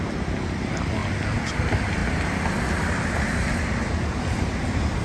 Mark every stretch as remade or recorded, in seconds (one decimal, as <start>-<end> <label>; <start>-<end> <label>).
0.0-5.0 recorded